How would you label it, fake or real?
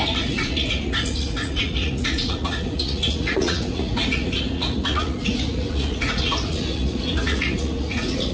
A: fake